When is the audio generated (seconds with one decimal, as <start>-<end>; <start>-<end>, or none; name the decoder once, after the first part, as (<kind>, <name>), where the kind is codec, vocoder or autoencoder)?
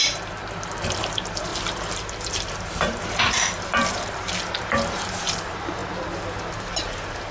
0.0-0.4 (vocoder, BigVGAN v2); 1.0-5.8; 6.6-7.3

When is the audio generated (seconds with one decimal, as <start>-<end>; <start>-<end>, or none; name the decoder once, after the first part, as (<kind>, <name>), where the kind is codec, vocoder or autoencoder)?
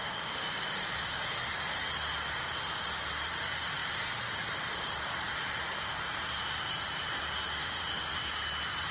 0.0-1.3 (vocoder, BigVGAN v2); 3.8-7.1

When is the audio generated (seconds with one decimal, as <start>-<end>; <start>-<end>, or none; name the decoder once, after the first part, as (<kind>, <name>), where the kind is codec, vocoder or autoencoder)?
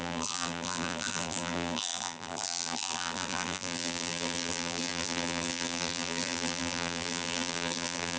0.0-8.2 (vocoder, BigVGAN v2)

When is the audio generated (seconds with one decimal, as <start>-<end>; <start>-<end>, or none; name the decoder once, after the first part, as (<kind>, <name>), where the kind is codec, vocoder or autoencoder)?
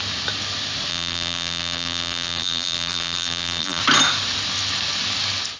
0.9-3.8 (vocoder, BigVGAN v2)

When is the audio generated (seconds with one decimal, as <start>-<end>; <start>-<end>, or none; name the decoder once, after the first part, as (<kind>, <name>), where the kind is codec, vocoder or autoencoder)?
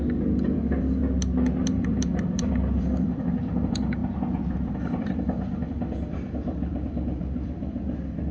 0.0-1.0 (vocoder, BigVGAN v2); 1.6-4.0; 4.7-8.3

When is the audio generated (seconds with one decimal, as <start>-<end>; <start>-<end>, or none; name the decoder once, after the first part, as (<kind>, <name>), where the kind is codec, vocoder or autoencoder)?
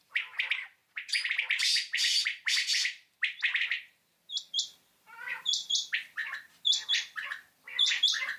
0.0-0.8 (vocoder, BigVGAN v2); 5.2-6.2; 7.6-8.4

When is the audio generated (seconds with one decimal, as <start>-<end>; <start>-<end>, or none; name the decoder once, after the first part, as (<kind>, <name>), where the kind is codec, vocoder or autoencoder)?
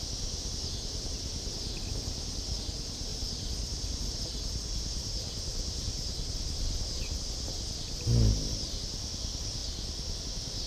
3.1-7.3 (vocoder, BigVGAN v2)